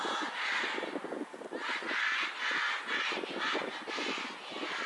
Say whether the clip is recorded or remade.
recorded